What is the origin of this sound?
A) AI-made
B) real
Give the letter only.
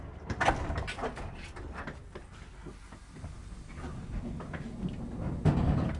B